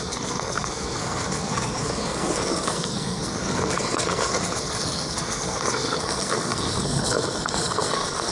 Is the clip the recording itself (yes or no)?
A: no